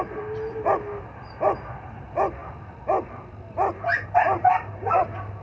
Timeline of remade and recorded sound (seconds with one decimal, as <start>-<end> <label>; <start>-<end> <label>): 0.0-2.4 recorded; 2.4-5.0 remade; 5.0-5.4 recorded